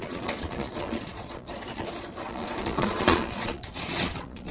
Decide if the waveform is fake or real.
fake